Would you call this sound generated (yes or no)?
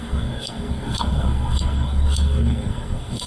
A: yes